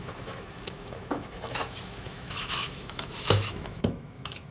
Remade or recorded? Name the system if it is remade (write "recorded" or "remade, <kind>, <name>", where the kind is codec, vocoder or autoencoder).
remade, autoencoder, DAC-VAE